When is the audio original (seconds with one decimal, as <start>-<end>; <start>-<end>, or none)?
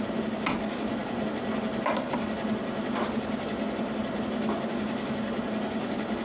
0.0-6.2